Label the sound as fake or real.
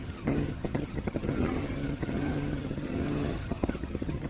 fake